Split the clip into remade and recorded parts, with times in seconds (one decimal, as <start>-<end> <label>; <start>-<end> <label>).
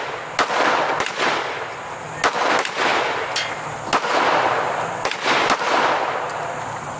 0.0-7.0 recorded